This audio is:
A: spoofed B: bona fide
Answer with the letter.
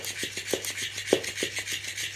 B